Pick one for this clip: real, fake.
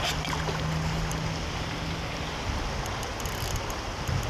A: real